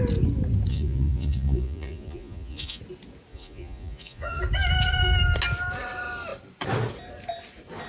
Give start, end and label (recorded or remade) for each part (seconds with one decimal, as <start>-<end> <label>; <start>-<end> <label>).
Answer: 0.0-0.7 recorded; 0.7-2.8 remade; 2.8-3.3 recorded; 3.3-4.4 remade; 4.4-7.9 recorded